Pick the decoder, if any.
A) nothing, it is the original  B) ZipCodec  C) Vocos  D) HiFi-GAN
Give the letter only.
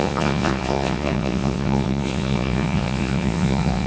C